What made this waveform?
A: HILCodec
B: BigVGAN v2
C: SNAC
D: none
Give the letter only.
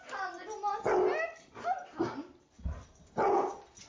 D